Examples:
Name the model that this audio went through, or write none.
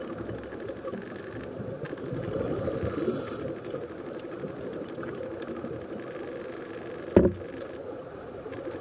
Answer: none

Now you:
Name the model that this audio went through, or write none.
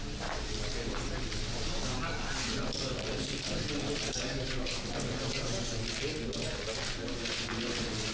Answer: none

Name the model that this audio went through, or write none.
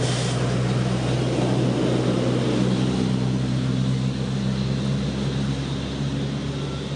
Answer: none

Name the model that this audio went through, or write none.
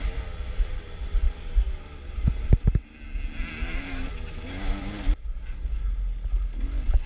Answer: none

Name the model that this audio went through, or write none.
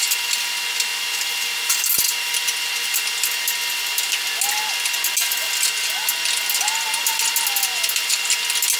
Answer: none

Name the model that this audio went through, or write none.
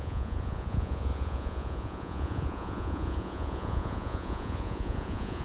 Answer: vocoder, Vocos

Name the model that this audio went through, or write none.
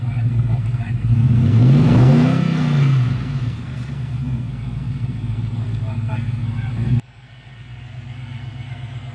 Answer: codec, SNAC